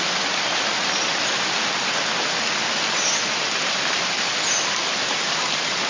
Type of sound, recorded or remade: recorded